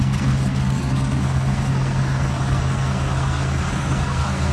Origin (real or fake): fake